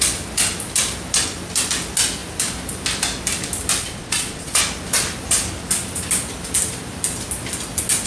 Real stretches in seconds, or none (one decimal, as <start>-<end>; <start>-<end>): 0.0-3.8; 4.6-8.1

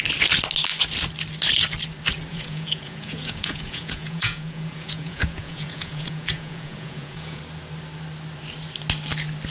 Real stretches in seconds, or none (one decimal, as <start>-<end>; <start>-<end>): 0.0-2.3; 7.4-9.5

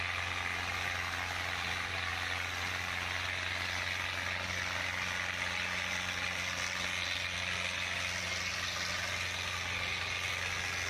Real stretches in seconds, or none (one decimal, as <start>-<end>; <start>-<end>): 0.0-10.9